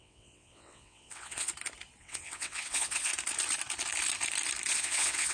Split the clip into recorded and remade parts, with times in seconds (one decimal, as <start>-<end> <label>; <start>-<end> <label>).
0.0-1.5 remade; 1.5-2.0 recorded; 2.0-3.1 remade; 3.1-4.7 recorded; 4.7-5.3 remade